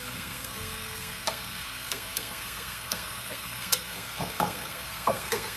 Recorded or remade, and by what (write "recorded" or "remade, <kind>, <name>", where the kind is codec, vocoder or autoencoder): remade, codec, SNAC